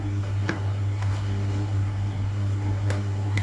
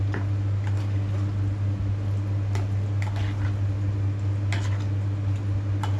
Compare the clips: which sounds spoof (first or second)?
first